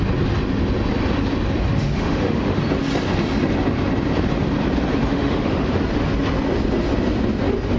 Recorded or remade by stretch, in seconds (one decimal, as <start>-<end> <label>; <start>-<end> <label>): 0.0-1.7 recorded; 1.7-2.6 remade; 2.6-5.1 recorded; 5.1-5.7 remade; 5.7-7.8 recorded